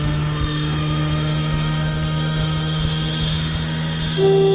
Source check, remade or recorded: remade